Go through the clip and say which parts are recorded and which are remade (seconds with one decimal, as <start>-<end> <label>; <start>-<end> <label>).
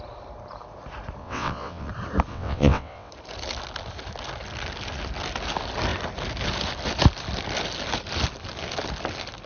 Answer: 0.0-1.2 recorded; 1.2-1.9 remade; 1.9-2.3 recorded; 2.3-3.1 remade; 3.1-9.5 recorded